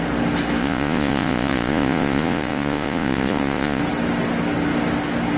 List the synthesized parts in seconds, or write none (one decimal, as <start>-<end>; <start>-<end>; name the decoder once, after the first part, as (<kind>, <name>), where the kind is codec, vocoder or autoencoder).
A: 0.6-3.8 (vocoder, Vocos)